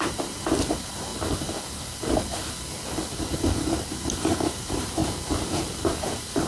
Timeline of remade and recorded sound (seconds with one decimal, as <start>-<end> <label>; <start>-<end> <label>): 0.0-1.1 remade; 1.1-3.9 recorded; 3.9-5.0 remade; 5.0-5.9 recorded; 5.9-6.5 remade